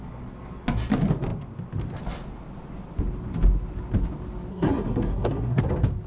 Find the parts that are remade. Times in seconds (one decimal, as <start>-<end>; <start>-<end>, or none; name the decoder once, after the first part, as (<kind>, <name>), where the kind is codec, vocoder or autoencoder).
4.5-5.6 (codec, SNAC)

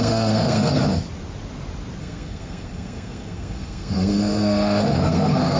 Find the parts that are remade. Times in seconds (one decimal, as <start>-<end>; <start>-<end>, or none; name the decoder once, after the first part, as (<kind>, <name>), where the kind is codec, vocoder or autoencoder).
0.0-0.8 (codec, SNAC); 2.0-5.6

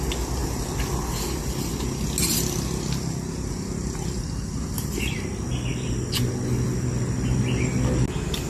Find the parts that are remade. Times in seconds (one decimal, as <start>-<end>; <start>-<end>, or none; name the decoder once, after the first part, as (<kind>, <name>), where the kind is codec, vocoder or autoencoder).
none

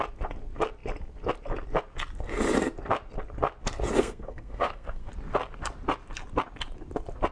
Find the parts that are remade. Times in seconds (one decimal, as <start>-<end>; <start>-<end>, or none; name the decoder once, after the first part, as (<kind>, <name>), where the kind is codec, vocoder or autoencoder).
4.0-5.1 (codec, SNAC)

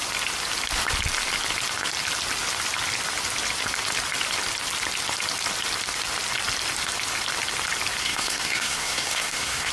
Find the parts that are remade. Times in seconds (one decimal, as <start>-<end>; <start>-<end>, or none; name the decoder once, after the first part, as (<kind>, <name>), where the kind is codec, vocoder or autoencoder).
8.0-9.7 (codec, SNAC)